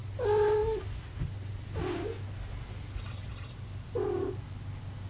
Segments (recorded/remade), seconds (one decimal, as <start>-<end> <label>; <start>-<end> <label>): 0.0-5.1 recorded